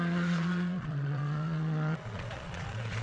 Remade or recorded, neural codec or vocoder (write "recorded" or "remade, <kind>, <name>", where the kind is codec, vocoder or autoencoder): remade, vocoder, Vocos